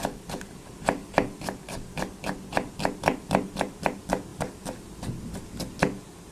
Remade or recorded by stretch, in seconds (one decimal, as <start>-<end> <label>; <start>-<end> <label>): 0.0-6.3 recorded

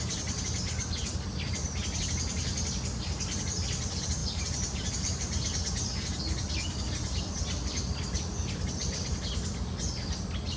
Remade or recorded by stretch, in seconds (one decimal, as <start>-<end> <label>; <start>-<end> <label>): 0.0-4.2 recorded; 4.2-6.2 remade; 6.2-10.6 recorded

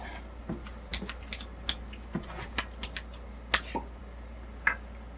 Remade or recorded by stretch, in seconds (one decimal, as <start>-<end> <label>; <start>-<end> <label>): 0.0-5.2 recorded

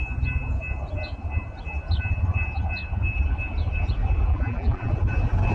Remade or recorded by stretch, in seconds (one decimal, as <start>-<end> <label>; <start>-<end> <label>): 0.0-4.3 recorded; 4.3-4.9 remade; 4.9-5.5 recorded

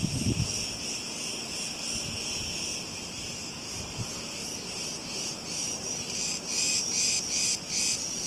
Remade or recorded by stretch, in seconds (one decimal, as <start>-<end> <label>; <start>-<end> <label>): 0.0-2.7 recorded; 2.7-3.5 remade; 3.5-4.4 recorded; 4.4-7.2 remade; 7.2-8.3 recorded